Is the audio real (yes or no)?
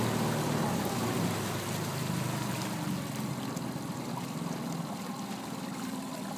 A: yes